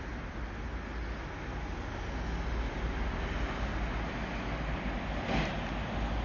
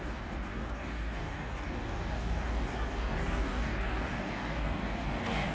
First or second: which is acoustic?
first